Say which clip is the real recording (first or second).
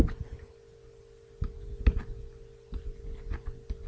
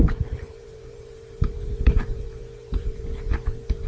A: first